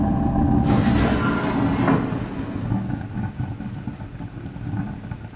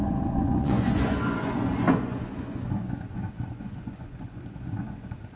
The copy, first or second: second